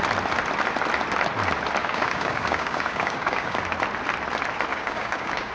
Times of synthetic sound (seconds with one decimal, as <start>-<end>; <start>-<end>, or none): 1.8-3.6; 4.7-5.5